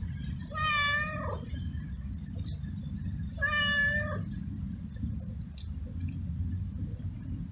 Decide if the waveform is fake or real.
real